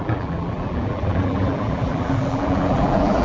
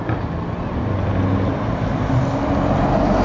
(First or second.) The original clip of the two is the second